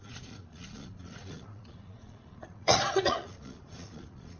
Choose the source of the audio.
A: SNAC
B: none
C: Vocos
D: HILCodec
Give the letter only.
C